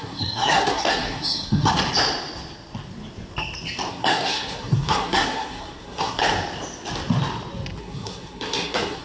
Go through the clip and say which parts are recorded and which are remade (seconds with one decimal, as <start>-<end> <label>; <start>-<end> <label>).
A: 0.0-1.7 remade; 1.7-3.9 recorded; 3.9-6.2 remade; 6.2-7.8 recorded; 7.8-9.0 remade